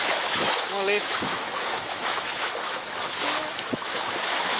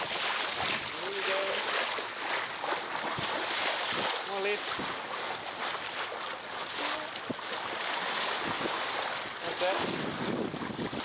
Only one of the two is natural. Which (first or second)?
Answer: second